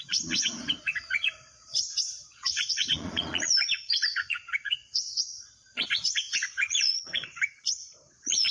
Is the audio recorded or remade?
remade